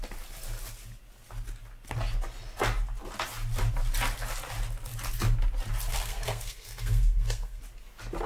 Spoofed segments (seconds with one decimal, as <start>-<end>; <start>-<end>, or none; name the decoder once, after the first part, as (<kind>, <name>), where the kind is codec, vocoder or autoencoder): 5.9-7.6 (codec, SNAC)